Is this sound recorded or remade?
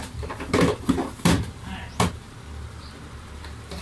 recorded